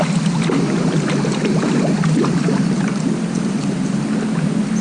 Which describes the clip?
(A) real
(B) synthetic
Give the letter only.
A